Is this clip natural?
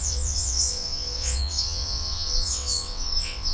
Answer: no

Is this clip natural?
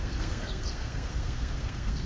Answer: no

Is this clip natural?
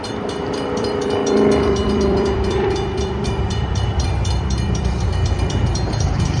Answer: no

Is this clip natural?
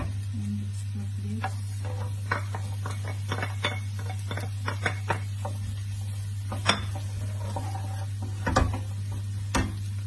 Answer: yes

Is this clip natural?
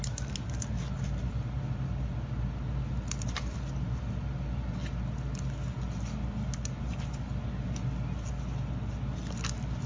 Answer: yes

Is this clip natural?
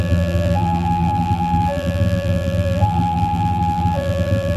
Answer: no